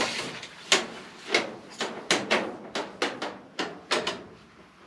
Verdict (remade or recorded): recorded